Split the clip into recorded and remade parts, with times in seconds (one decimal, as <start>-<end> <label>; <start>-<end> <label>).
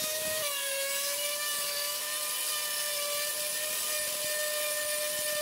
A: 0.0-2.1 remade; 2.1-5.4 recorded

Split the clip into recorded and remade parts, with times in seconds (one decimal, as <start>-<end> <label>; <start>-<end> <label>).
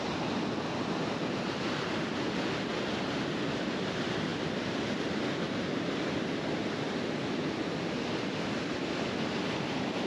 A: 0.0-10.1 recorded